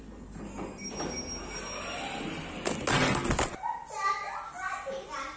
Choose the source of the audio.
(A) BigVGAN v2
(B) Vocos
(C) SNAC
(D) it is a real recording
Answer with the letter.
D